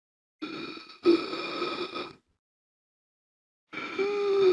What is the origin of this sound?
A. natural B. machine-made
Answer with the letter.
A